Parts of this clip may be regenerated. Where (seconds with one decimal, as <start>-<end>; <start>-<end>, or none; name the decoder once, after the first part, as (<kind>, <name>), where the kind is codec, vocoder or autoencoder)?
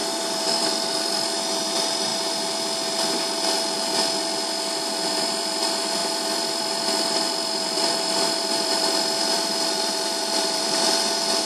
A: 0.0-2.1 (vocoder, BigVGAN v2); 5.1-11.4